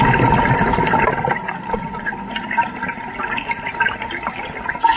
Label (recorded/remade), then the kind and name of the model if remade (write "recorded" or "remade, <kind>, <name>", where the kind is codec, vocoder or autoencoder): recorded